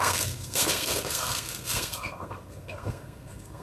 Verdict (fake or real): fake